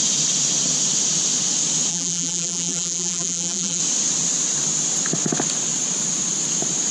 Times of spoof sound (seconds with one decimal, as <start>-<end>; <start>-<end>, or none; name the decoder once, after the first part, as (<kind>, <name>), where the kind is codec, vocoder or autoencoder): 1.9-3.8 (vocoder, BigVGAN v2)